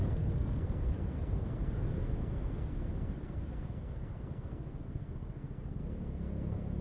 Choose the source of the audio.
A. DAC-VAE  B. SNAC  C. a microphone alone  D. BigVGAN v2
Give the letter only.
B